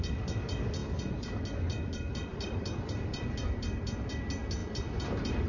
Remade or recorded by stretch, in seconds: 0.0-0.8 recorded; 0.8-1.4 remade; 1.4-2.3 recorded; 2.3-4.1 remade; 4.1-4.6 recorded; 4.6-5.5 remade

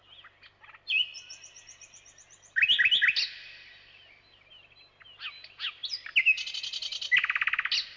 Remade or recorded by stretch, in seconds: 0.0-8.0 recorded

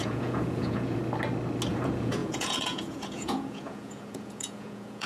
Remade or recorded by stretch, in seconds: 0.0-1.0 remade; 1.0-1.7 recorded; 1.7-5.1 remade

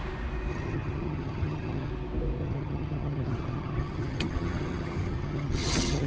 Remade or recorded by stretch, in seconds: 0.0-0.5 recorded; 0.5-1.9 remade; 1.9-2.4 recorded; 2.4-6.1 remade

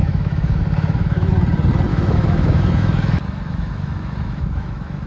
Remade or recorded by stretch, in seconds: 0.0-1.3 remade; 1.3-1.9 recorded; 1.9-5.1 remade

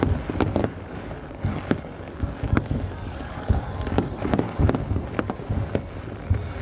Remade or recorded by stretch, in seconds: 0.0-0.6 recorded; 0.6-4.6 remade; 4.6-6.6 recorded